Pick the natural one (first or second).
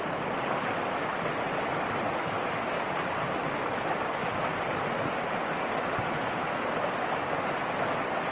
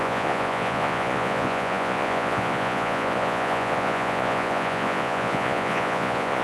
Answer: first